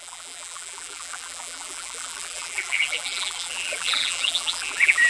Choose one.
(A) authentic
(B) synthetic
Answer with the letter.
B